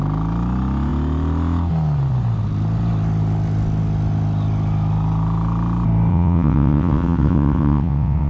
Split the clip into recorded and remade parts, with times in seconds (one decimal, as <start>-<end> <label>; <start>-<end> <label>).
0.0-6.1 recorded; 6.1-8.3 remade